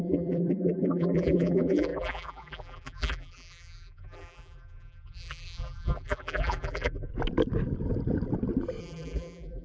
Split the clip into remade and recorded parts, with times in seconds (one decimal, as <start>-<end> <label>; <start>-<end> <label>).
0.0-7.1 remade; 7.1-8.8 recorded; 8.8-9.6 remade